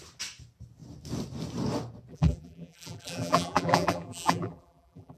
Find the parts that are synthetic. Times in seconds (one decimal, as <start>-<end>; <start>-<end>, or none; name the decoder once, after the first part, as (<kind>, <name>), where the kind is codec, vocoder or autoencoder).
2.1-5.2 (vocoder, BigVGAN v2)